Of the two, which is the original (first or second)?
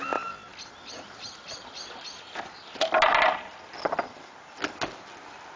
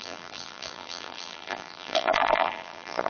first